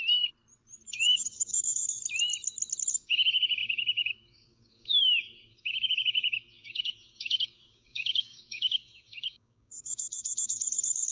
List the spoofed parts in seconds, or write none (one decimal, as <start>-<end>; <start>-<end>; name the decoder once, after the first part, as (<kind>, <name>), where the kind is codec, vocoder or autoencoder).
0.9-2.0 (codec, DAC); 2.9-11.1